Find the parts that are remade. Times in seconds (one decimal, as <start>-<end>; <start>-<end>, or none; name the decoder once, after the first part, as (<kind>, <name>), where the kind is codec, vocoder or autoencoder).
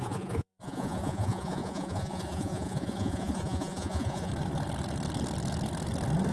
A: 0.0-4.3 (vocoder, Vocos)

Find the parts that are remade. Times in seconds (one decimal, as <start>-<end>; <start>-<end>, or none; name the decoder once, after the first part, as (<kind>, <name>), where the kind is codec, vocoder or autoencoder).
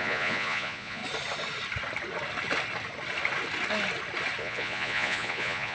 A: 0.0-1.0 (vocoder, Vocos); 4.4-5.7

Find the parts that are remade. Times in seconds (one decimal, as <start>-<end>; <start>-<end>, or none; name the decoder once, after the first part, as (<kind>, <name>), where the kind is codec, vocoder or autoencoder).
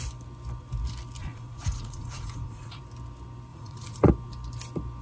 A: 1.2-2.8 (vocoder, Vocos); 3.5-4.1